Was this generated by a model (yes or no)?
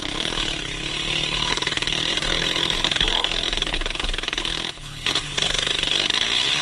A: yes